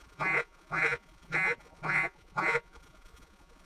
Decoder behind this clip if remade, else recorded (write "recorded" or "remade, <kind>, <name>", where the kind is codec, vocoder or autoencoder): remade, vocoder, Vocos